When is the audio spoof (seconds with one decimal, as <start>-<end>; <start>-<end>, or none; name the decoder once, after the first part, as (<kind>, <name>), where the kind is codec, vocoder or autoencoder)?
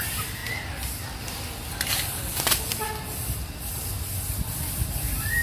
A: 0.0-0.4 (vocoder, BigVGAN v2); 1.7-3.7; 4.7-5.4